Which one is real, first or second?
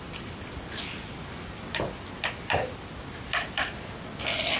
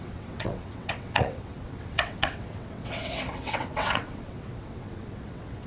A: first